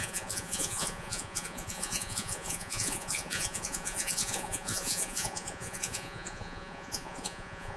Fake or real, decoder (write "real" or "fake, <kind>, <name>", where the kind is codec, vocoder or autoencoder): fake, vocoder, Vocos